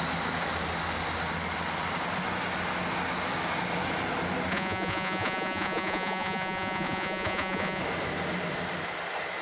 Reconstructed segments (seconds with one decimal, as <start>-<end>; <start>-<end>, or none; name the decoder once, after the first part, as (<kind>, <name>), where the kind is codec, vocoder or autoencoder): 4.5-7.8 (vocoder, Vocos)